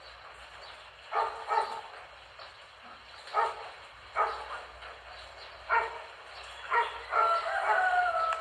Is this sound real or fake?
real